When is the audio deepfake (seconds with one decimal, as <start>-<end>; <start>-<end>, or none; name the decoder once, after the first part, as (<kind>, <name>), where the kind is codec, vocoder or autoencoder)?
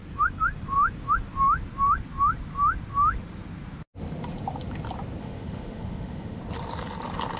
5.2-6.4 (autoencoder, DAC-VAE)